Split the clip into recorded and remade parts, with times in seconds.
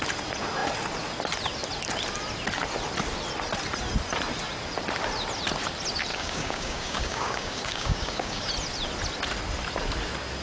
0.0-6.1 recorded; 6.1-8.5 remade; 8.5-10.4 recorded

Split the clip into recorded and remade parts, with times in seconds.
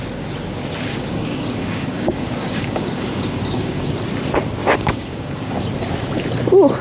0.0-0.9 recorded; 0.9-3.9 remade; 3.9-4.6 recorded; 4.6-5.6 remade; 5.6-6.8 recorded